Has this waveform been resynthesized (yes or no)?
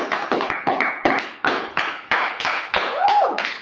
yes